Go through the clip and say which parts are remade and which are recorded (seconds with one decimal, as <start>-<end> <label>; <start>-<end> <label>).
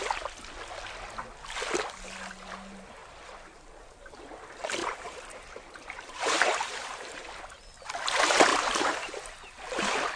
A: 0.0-3.0 recorded; 3.0-4.2 remade; 4.2-4.8 recorded; 4.8-7.4 remade; 7.4-8.5 recorded; 8.5-9.2 remade; 9.2-10.2 recorded